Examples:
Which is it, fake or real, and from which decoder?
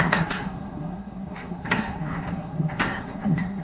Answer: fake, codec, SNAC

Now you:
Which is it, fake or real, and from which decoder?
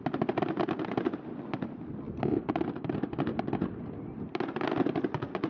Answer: real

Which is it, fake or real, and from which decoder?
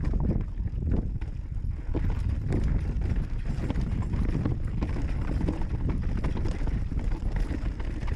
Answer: real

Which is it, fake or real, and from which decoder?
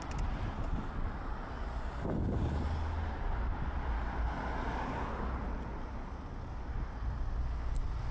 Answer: real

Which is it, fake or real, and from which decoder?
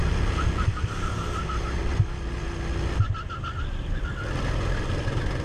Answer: real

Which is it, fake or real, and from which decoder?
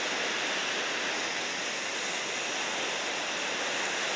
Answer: real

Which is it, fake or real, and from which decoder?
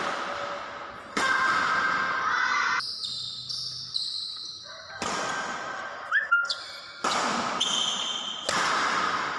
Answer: real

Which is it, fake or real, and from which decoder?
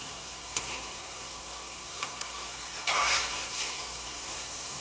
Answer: fake, codec, SNAC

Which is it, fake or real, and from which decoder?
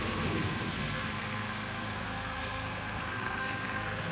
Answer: fake, codec, SNAC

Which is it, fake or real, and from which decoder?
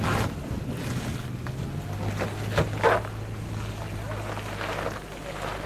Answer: real